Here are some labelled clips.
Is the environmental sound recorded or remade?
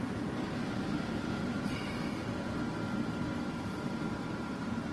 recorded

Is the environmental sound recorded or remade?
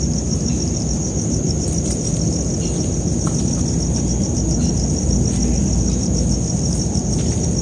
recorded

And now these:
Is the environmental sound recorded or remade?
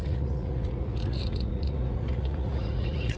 remade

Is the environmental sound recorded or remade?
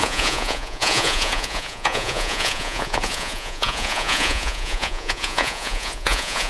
remade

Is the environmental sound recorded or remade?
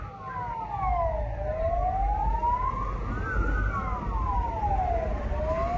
recorded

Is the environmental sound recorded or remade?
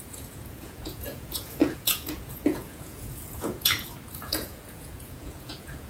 remade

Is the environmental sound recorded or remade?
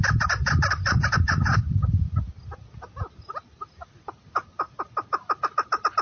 recorded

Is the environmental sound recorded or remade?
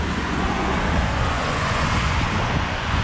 remade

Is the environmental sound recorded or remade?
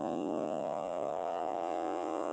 remade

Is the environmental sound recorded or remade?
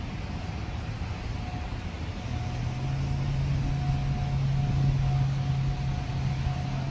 recorded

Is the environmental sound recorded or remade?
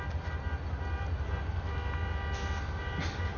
recorded